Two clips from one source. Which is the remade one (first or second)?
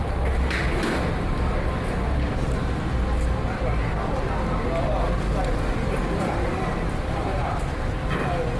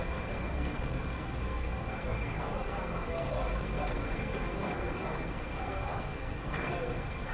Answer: second